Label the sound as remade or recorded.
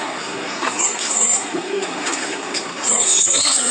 remade